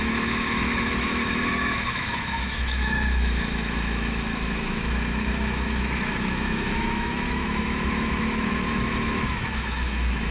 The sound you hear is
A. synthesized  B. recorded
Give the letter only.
A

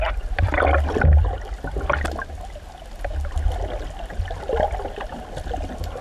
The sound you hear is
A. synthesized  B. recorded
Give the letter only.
B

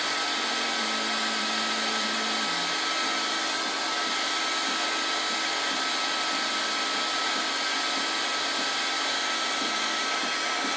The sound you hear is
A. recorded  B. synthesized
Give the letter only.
A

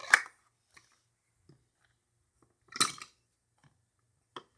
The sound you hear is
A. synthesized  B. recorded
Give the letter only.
B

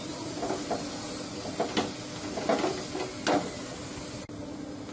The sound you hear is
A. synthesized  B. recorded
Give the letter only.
B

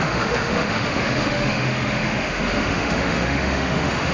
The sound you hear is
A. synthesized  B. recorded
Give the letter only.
A